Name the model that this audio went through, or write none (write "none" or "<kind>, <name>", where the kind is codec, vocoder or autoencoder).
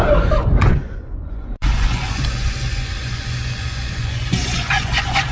vocoder, Vocos